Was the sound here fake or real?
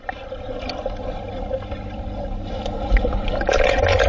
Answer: real